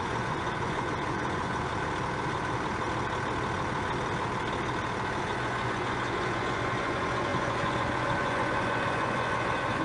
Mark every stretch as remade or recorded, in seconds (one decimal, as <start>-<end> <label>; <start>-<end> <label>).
0.0-1.7 remade; 1.7-5.2 recorded; 5.2-9.8 remade